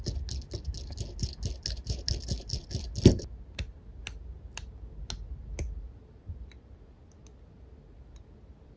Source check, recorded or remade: recorded